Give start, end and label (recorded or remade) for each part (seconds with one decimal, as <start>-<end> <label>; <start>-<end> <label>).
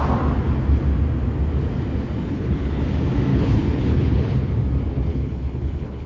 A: 0.0-2.2 recorded; 2.2-2.8 remade; 2.8-3.3 recorded; 3.3-4.5 remade; 4.5-5.1 recorded; 5.1-6.1 remade